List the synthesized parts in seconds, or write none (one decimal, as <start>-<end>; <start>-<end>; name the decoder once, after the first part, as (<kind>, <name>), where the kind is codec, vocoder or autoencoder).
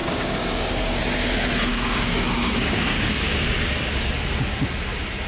0.0-1.0 (codec, DAC); 1.7-3.3